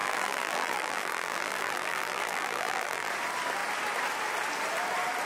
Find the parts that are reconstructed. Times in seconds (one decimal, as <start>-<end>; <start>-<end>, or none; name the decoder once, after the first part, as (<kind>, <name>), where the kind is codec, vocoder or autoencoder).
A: 0.0-3.1 (vocoder, BigVGAN v2)